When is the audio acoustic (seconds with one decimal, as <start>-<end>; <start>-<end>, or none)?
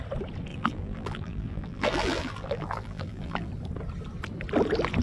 0.0-0.5; 3.5-5.0